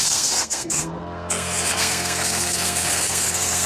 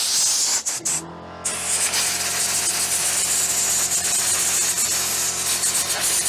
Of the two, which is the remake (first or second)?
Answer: first